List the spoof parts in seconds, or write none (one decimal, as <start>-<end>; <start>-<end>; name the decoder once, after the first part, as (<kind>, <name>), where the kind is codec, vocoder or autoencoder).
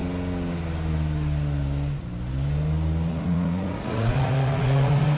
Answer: 3.1-5.2 (vocoder, Vocos)